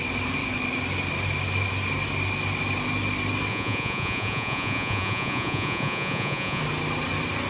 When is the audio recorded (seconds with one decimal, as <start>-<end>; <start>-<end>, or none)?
0.0-3.5; 6.6-7.5

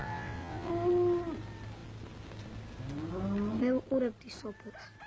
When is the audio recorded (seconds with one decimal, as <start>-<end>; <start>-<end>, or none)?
0.7-5.1

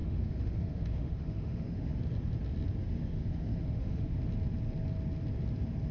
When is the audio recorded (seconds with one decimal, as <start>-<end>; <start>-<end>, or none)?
2.0-2.8; 4.2-5.9

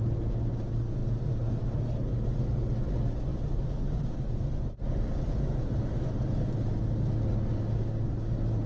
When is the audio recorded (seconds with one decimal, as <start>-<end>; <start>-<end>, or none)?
0.0-8.7

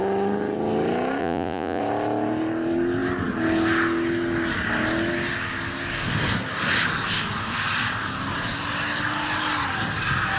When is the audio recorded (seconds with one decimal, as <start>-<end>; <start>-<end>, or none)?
0.0-1.2; 1.8-10.4